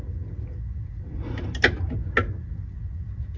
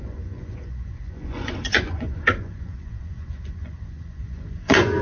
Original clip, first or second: first